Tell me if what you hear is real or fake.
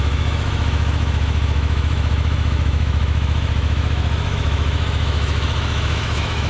fake